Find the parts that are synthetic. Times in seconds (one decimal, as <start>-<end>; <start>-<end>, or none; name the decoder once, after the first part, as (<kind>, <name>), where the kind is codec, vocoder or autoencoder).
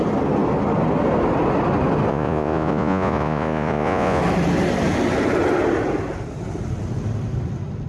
2.1-4.2 (vocoder, Vocos)